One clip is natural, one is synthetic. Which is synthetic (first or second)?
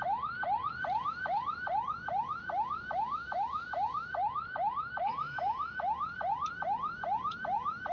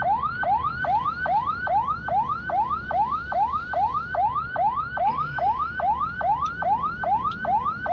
first